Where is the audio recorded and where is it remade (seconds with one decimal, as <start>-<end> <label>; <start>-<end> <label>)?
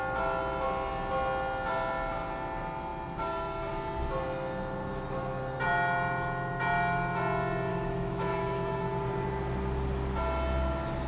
0.0-7.7 recorded; 7.7-9.0 remade; 9.0-11.1 recorded